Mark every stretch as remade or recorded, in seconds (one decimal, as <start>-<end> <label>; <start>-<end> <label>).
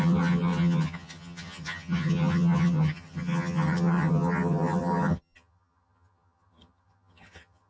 0.0-7.7 remade